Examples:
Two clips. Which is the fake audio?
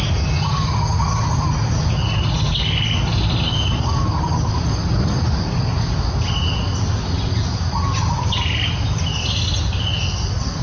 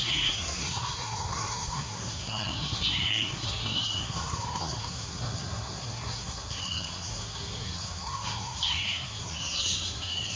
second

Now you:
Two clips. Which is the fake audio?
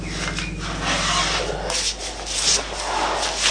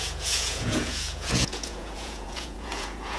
second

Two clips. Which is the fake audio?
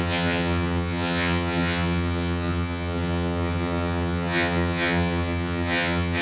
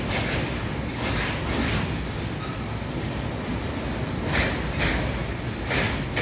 first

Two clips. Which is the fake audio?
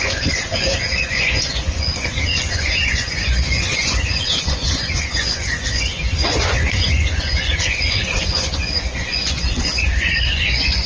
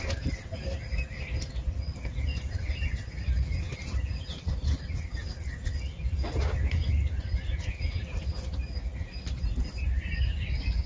first